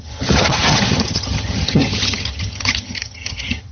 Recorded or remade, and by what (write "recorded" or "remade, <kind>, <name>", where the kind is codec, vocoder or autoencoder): remade, vocoder, HiFi-GAN